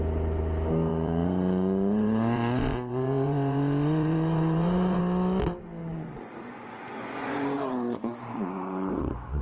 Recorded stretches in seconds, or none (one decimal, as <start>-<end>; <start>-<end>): 0.0-0.9; 5.0-5.8